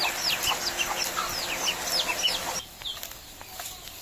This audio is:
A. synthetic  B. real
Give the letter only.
B